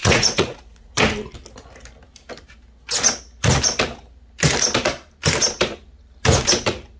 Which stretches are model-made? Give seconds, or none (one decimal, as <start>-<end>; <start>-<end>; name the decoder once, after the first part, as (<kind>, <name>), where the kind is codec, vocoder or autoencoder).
0.0-0.9 (vocoder, Vocos)